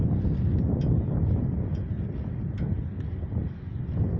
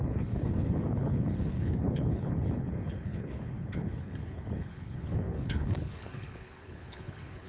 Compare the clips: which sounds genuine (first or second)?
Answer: first